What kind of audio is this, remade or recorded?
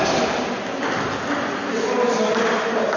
recorded